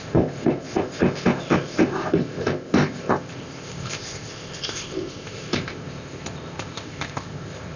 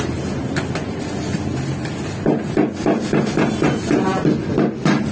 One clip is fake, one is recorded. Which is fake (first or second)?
first